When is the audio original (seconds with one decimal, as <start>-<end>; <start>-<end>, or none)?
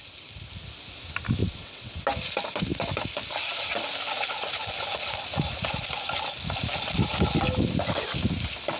0.0-1.4; 2.0-8.8